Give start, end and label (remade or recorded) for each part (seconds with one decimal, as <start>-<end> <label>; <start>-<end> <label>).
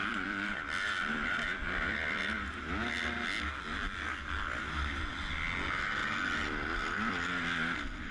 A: 0.0-2.2 remade; 2.2-6.0 recorded; 6.0-7.1 remade; 7.1-8.1 recorded